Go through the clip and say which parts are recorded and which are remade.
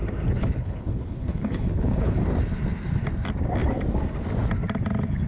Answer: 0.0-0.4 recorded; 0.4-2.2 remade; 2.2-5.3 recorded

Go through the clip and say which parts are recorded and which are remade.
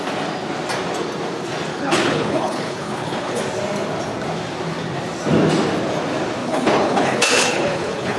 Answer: 0.0-1.7 recorded; 1.7-3.4 remade; 3.4-6.4 recorded; 6.4-8.2 remade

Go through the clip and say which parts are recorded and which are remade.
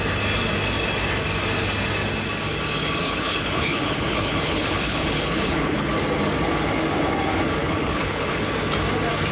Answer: 0.0-3.0 recorded; 3.0-5.9 remade; 5.9-7.6 recorded; 7.6-8.5 remade; 8.5-9.3 recorded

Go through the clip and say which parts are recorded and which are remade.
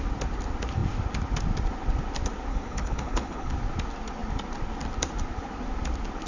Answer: 0.0-2.5 recorded; 2.5-3.5 remade; 3.5-6.3 recorded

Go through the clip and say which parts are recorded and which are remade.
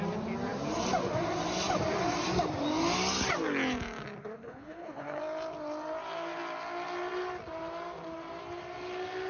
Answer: 0.0-4.4 recorded; 4.4-5.2 remade; 5.2-9.3 recorded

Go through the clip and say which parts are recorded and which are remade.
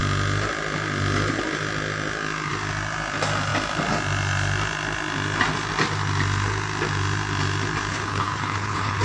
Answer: 0.0-7.9 recorded; 7.9-9.0 remade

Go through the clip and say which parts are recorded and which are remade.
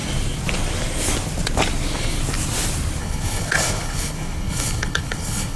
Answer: 0.0-3.0 recorded; 3.0-5.6 remade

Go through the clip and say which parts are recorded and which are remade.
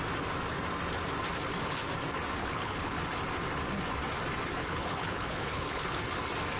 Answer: 0.0-2.4 recorded; 2.4-3.0 remade; 3.0-4.6 recorded; 4.6-6.0 remade; 6.0-6.6 recorded